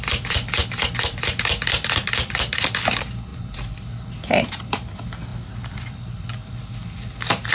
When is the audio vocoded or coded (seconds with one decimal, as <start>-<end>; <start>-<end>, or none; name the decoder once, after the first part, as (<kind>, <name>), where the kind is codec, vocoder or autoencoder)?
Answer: 0.6-1.3 (vocoder, BigVGAN v2); 3.3-4.6; 5.3-6.7